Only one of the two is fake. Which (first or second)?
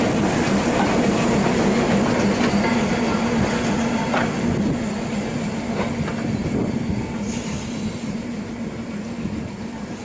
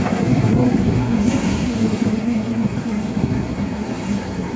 second